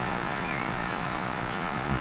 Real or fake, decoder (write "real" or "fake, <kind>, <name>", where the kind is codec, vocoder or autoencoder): fake, vocoder, Vocos